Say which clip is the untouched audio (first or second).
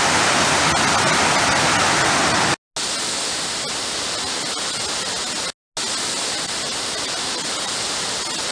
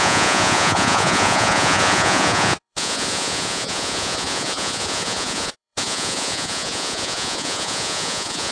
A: first